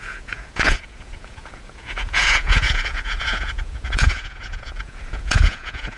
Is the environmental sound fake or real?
fake